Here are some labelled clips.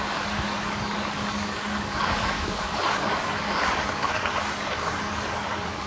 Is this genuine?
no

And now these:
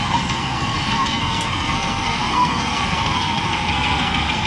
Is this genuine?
no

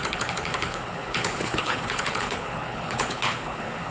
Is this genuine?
no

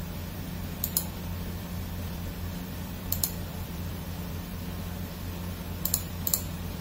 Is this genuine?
no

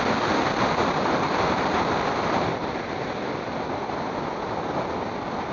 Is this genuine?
yes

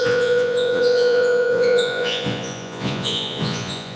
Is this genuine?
no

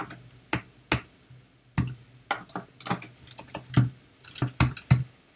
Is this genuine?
yes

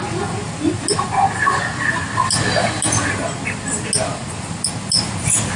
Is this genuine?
yes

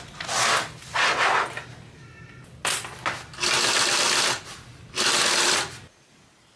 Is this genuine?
yes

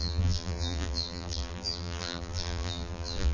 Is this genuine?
no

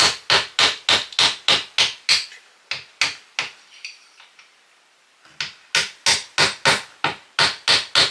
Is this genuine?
yes